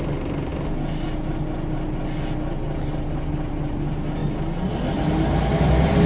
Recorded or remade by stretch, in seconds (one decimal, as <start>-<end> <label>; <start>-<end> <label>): 0.0-6.1 recorded